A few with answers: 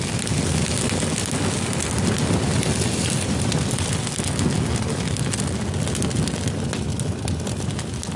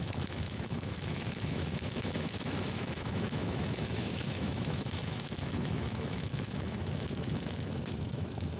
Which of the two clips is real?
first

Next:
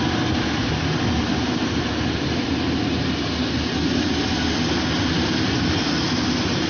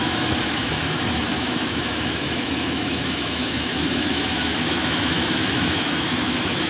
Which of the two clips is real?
first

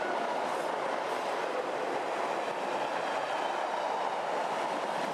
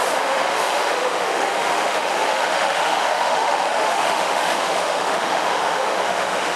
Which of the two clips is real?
first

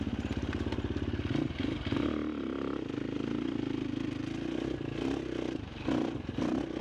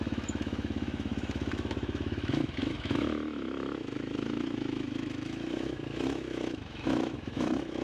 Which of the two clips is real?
first